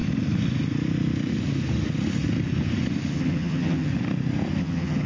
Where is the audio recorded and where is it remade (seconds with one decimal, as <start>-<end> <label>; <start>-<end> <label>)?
0.0-3.1 recorded; 3.1-3.9 remade; 3.9-4.6 recorded; 4.6-5.1 remade